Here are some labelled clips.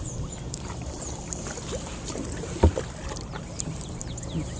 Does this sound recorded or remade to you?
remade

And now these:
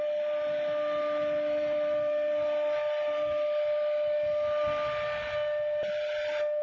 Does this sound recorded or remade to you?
recorded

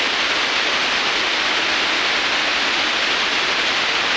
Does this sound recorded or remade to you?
recorded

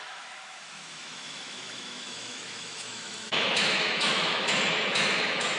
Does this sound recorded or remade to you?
remade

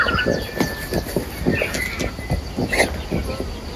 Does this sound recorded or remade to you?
recorded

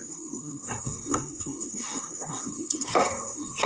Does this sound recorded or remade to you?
remade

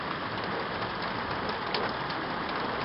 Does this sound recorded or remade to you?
recorded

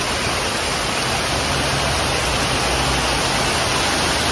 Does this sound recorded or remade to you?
recorded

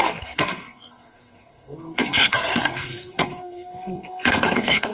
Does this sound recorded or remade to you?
remade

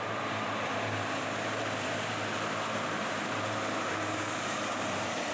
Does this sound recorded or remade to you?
remade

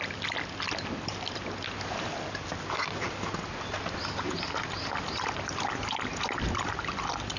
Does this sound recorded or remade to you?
recorded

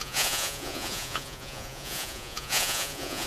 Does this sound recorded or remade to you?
remade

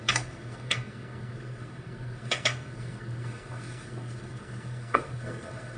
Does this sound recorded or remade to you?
remade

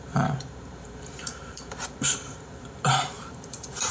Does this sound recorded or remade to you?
remade